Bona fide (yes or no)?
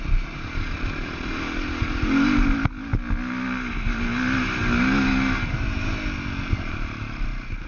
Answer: yes